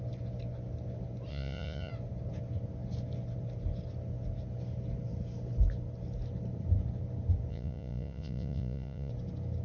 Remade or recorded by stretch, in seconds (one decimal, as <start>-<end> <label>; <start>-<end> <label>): 0.0-1.3 recorded; 1.3-1.9 remade; 1.9-7.5 recorded; 7.5-9.1 remade; 9.1-9.6 recorded